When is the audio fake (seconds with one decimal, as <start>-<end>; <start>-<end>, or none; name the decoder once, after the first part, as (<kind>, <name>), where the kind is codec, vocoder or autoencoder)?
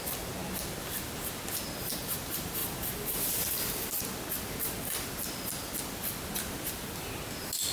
none